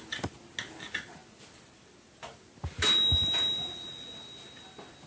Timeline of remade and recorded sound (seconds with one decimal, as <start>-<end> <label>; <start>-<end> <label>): 0.0-5.1 recorded